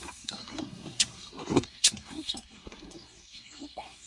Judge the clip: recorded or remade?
remade